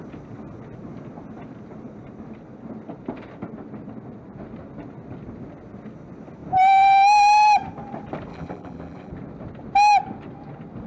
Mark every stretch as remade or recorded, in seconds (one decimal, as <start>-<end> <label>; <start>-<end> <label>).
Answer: 0.0-8.3 recorded; 8.3-9.1 remade; 9.1-10.9 recorded